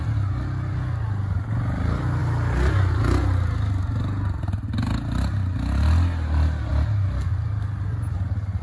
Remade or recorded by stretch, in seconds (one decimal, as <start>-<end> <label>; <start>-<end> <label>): 0.0-8.6 recorded